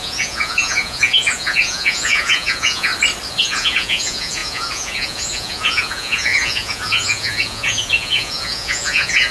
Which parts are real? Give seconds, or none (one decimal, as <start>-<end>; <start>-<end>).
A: 2.9-3.4